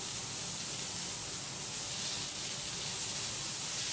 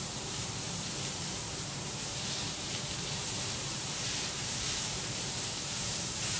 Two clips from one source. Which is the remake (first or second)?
second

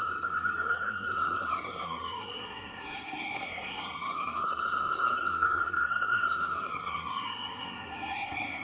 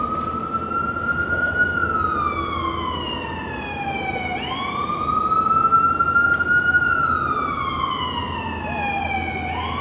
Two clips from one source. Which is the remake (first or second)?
first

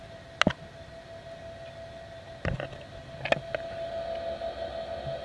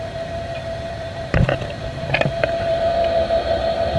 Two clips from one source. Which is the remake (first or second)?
second